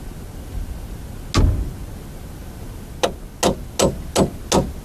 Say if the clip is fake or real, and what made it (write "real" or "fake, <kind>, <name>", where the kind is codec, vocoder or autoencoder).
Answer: real